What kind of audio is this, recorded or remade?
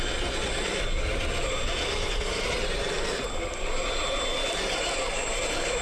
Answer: recorded